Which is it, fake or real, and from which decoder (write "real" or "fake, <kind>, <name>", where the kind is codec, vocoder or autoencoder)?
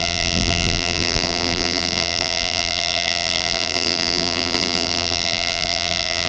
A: fake, vocoder, BigVGAN v2